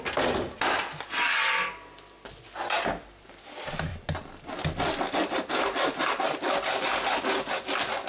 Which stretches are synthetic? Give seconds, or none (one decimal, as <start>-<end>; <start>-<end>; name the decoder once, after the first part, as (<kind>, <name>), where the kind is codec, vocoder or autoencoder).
none